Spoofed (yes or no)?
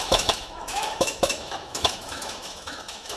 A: yes